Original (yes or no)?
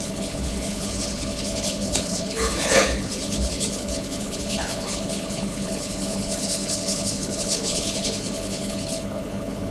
no